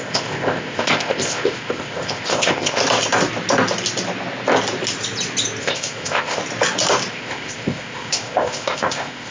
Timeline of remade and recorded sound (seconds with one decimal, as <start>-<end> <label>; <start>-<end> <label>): 0.0-2.8 remade; 2.8-5.6 recorded; 5.6-6.4 remade; 6.4-7.1 recorded; 7.1-9.3 remade